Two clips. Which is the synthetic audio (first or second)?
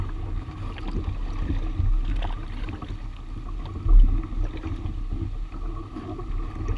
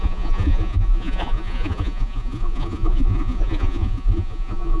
second